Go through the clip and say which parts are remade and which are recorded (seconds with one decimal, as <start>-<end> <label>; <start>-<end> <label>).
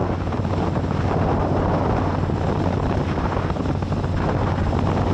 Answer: 0.0-5.1 recorded